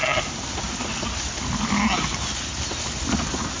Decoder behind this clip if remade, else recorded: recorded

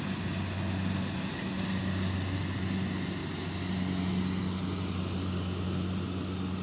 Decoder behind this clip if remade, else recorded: recorded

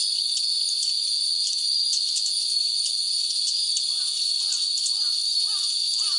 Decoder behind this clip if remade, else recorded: recorded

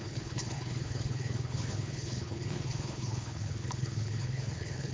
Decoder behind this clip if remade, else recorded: remade, codec, HILCodec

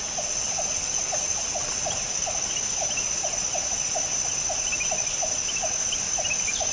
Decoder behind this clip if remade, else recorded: recorded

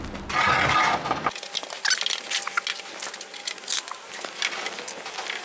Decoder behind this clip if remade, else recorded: recorded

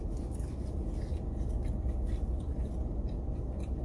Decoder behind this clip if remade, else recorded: recorded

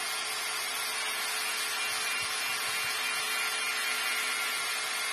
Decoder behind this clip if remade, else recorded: recorded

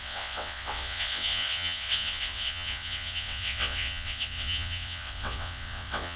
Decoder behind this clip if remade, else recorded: remade, vocoder, WaveNeXt